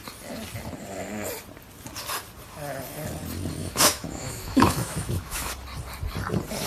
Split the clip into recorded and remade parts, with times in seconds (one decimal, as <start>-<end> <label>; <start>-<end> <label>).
0.0-3.6 recorded; 3.6-5.5 remade; 5.5-6.7 recorded